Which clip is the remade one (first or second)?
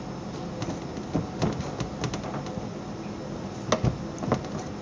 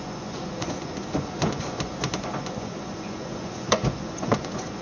second